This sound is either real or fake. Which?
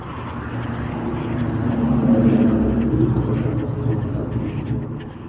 real